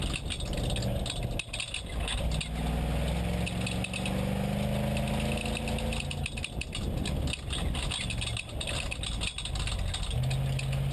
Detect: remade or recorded recorded